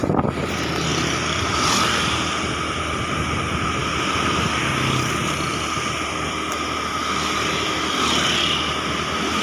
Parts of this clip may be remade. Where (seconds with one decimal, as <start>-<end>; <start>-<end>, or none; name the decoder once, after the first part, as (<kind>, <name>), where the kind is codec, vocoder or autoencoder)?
none